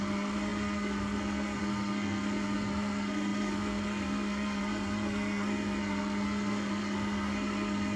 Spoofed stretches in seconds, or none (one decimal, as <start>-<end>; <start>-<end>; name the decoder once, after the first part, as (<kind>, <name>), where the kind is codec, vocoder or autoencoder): 0.0-8.0 (codec, SNAC)